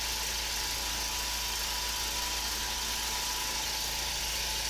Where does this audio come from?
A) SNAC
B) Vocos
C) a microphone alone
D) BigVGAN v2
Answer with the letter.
C